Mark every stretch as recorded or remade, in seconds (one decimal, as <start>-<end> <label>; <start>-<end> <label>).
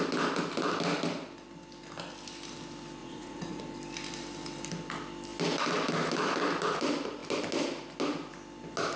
0.0-3.0 recorded; 3.0-3.6 remade; 3.6-9.0 recorded